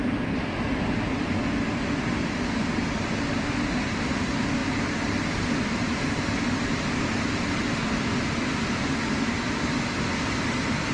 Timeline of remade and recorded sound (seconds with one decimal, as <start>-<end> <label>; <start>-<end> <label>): 0.0-4.6 recorded; 4.6-6.7 remade; 6.7-10.9 recorded